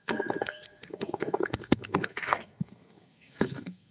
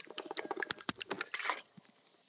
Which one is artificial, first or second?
first